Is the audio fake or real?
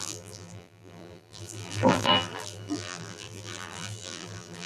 fake